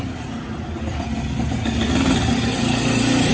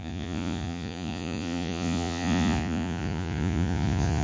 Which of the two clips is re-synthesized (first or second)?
second